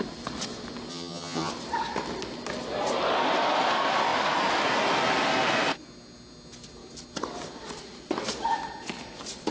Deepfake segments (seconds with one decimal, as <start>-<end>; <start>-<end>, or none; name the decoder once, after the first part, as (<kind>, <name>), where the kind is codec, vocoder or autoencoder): 0.9-1.5 (vocoder, HiFi-GAN)